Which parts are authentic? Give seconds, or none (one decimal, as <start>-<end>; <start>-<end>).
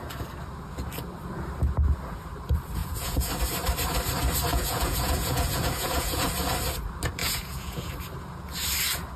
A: 0.0-2.8; 3.3-4.5; 6.3-7.2; 7.9-9.2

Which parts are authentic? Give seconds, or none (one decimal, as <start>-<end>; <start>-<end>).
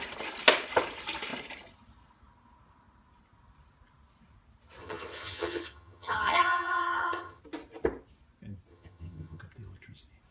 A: 0.0-4.8; 7.4-8.7; 9.4-10.3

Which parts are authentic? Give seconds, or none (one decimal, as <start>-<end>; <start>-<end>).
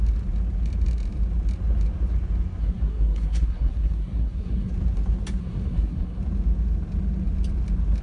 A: 0.0-2.6; 4.7-5.4; 6.2-8.0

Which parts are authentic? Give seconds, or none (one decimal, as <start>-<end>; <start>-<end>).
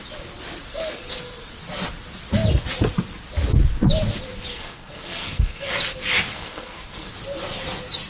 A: 0.0-0.7; 1.5-4.5; 5.7-6.3; 7.1-8.1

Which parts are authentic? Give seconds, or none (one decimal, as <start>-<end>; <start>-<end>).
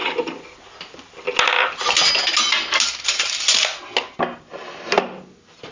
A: 0.0-5.7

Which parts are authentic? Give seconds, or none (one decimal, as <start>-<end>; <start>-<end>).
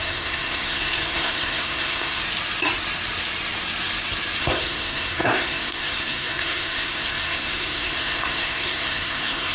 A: 2.2-4.4